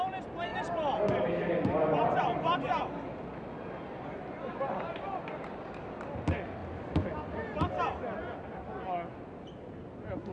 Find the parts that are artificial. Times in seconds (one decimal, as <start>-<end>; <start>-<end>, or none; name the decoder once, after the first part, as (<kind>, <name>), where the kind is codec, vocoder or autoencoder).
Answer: none